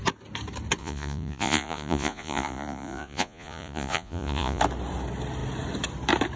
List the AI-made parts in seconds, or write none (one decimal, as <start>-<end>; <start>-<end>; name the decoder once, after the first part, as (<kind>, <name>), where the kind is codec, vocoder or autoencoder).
0.8-4.6 (vocoder, Vocos)